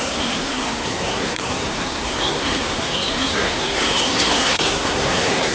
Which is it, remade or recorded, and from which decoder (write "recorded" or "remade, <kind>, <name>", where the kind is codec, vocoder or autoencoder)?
remade, codec, SNAC